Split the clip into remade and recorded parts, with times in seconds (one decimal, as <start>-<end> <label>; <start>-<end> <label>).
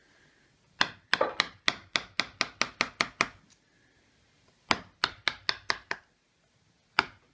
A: 0.0-7.3 recorded